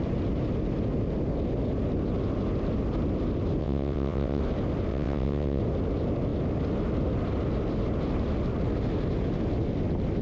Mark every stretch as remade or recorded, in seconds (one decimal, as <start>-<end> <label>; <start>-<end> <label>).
0.0-3.6 recorded; 3.6-4.4 remade; 4.4-4.9 recorded; 4.9-5.6 remade; 5.6-10.2 recorded